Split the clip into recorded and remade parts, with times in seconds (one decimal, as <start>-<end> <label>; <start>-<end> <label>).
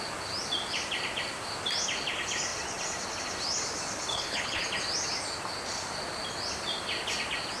0.0-4.1 recorded; 4.1-4.6 remade; 4.6-7.6 recorded